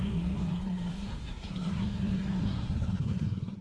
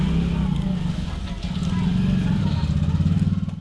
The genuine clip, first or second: second